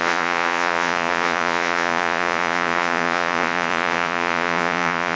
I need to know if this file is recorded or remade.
remade